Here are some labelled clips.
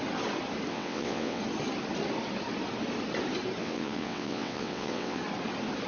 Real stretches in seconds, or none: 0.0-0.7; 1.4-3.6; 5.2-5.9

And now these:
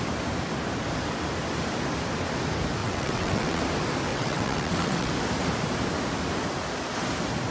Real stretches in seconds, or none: 0.0-2.8; 3.6-4.1; 5.1-7.5

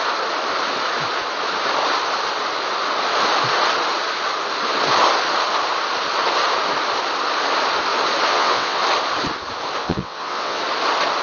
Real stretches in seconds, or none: 0.0-8.3; 8.8-9.8; 10.6-11.2